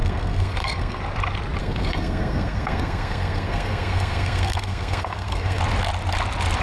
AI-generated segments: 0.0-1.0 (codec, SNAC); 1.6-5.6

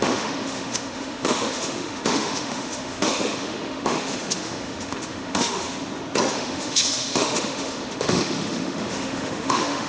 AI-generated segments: 0.0-5.7 (autoencoder, DAC-VAE); 6.3-9.9